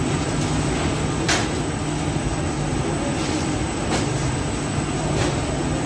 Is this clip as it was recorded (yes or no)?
yes